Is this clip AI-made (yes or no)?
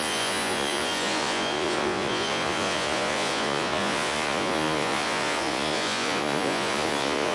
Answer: yes